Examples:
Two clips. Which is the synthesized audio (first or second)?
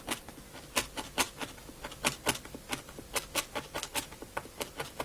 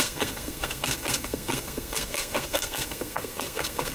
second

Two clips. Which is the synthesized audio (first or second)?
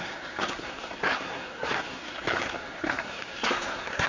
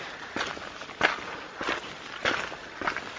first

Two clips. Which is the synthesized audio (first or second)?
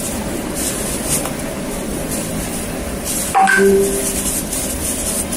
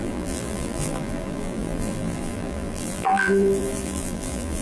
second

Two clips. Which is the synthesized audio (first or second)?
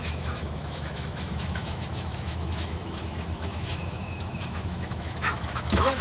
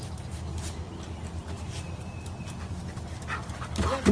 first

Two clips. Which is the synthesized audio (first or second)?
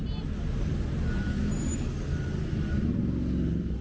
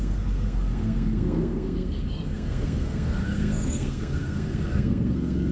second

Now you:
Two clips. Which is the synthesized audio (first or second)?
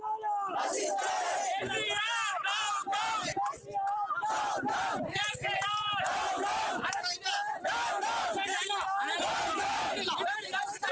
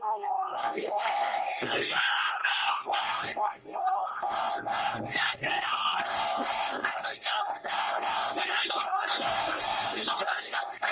second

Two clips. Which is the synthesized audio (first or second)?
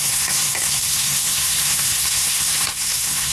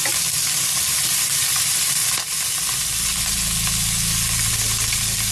first